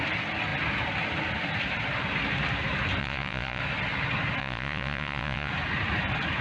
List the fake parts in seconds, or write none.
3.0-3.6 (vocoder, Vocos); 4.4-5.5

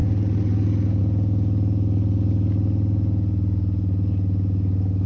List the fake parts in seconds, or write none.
none

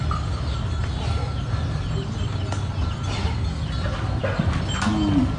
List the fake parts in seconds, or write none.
none

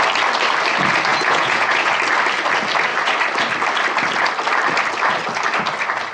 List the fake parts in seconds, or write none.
1.1-1.9 (vocoder, Vocos)

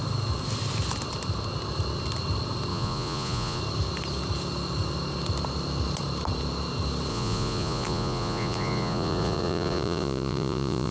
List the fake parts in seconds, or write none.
2.7-3.6 (vocoder, Vocos); 7.1-10.9